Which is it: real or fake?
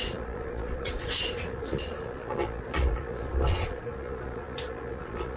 fake